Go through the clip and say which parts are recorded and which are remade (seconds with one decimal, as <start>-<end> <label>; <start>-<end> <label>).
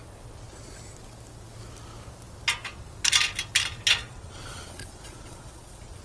0.0-4.0 recorded; 4.0-6.0 remade